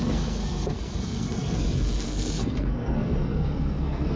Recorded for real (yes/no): no